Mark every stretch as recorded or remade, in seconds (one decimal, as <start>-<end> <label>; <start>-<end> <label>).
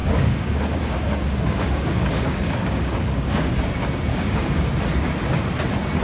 0.0-3.6 remade; 3.6-4.1 recorded; 4.1-4.7 remade; 4.7-6.0 recorded